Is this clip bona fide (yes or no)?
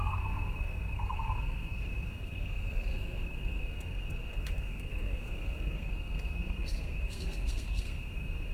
no